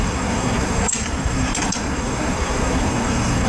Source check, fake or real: fake